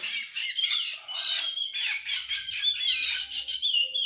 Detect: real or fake fake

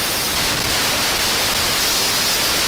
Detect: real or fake real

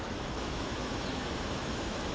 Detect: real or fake fake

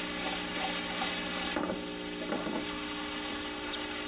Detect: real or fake real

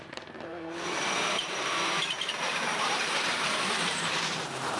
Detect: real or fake fake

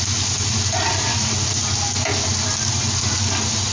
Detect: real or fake real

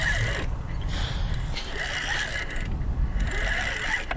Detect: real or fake real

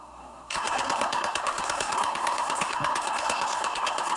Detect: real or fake fake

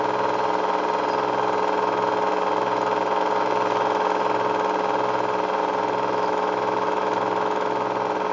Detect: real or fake real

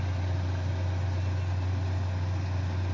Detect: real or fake real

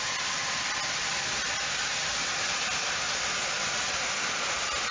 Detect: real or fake real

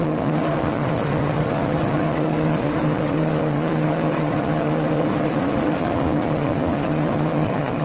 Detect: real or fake fake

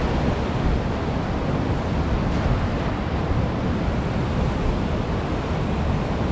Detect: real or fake real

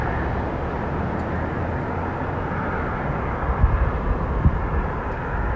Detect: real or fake real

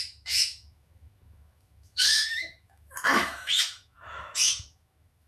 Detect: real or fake fake